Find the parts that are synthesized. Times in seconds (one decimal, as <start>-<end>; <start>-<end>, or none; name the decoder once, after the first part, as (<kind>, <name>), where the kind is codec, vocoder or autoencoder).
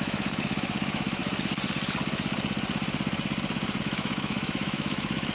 0.0-1.2 (autoencoder, DAC-VAE); 3.8-5.3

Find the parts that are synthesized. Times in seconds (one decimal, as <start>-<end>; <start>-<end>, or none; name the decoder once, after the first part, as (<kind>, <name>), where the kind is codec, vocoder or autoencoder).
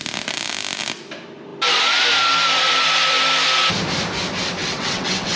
4.6-5.4 (vocoder, WaveNeXt)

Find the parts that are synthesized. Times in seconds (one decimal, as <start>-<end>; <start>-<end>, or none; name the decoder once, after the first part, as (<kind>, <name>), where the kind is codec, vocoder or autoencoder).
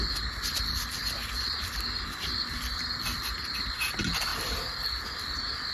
none